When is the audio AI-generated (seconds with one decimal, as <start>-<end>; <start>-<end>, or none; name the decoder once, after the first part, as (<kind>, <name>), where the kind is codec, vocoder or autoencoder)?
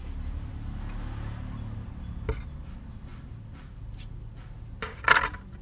none